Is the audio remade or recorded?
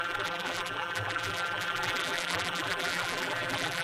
remade